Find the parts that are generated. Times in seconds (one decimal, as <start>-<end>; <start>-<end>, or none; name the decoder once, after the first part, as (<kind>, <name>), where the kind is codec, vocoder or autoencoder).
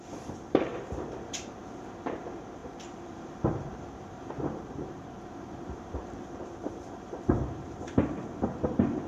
0.0-9.1 (vocoder, BigVGAN v2)